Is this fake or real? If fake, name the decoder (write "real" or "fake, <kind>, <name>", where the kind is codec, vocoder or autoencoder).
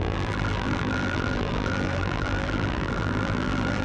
fake, vocoder, BigVGAN v2